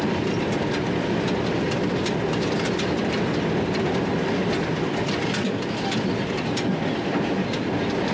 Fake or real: real